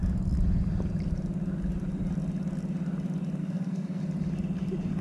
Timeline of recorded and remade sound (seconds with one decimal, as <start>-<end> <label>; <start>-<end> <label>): 0.0-3.4 recorded; 3.4-4.0 remade; 4.0-5.0 recorded